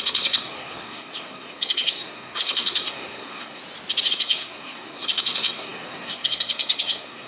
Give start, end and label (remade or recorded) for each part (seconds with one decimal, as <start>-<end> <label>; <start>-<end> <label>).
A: 0.0-3.6 remade; 3.6-4.1 recorded; 4.1-7.3 remade